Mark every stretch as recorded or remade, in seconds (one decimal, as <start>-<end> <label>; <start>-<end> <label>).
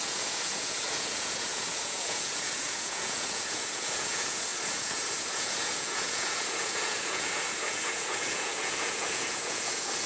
0.0-10.1 remade